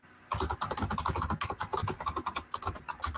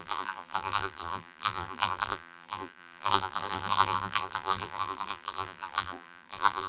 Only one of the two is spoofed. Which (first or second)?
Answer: second